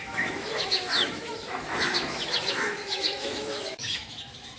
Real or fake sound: fake